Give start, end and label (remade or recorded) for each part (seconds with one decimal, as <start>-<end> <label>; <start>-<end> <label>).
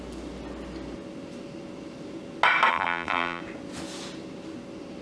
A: 0.0-2.7 recorded; 2.7-3.4 remade; 3.4-5.0 recorded